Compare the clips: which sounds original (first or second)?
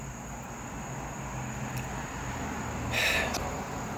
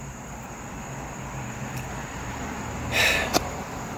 first